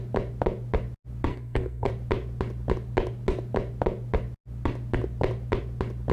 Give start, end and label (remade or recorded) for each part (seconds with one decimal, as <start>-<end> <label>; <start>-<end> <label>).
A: 0.0-1.3 recorded; 1.3-1.9 remade; 1.9-6.1 recorded

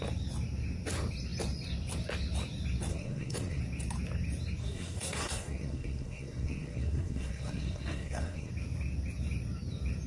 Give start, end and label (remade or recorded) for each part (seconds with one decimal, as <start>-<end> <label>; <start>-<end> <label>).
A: 0.0-2.9 recorded; 2.9-3.6 remade; 3.6-4.6 recorded; 4.6-8.5 remade; 8.5-10.1 recorded

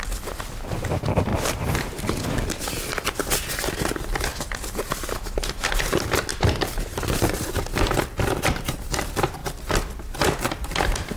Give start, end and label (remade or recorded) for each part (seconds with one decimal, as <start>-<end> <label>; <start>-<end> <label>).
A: 0.0-4.3 remade; 4.3-6.3 recorded; 6.3-9.4 remade; 9.4-10.2 recorded; 10.2-11.2 remade